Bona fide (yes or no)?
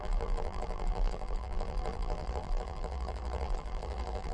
no